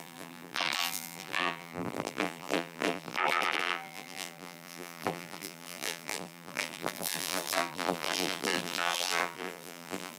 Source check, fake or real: fake